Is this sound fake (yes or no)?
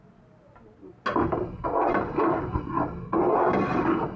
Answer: no